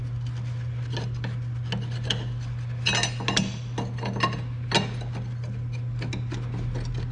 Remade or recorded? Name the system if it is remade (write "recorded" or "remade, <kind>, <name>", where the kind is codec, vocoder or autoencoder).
recorded